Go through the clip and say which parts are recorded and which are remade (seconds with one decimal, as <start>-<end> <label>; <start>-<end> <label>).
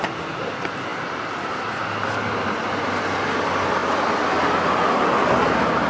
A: 0.0-5.9 recorded